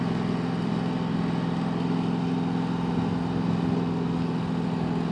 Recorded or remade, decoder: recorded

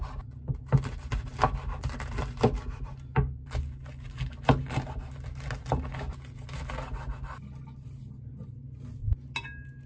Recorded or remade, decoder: recorded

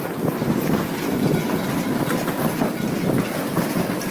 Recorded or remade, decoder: recorded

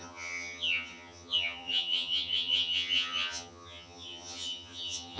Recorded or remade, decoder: remade, vocoder, HiFi-GAN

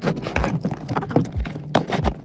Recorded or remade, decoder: recorded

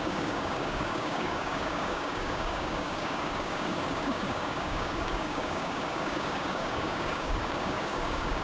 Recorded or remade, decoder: remade, codec, DAC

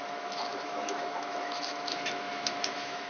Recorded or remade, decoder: remade, autoencoder, DAC-VAE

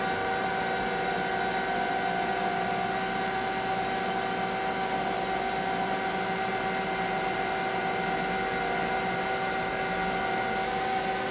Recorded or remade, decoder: recorded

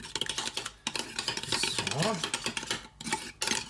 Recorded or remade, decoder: recorded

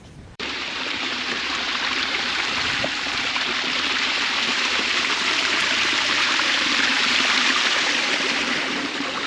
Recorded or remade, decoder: remade, vocoder, BigVGAN v2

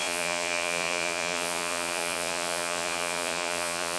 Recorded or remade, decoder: remade, vocoder, Vocos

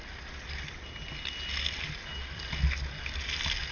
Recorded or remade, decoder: recorded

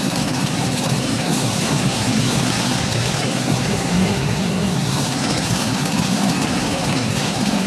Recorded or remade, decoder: remade, codec, SNAC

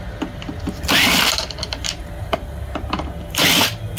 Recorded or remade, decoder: recorded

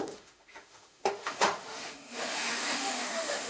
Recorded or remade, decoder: remade, autoencoder, DAC-VAE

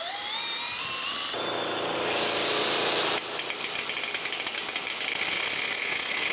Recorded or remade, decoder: recorded